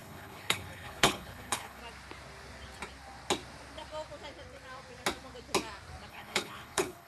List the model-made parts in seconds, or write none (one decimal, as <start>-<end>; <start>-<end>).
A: 0.0-1.8; 6.1-7.1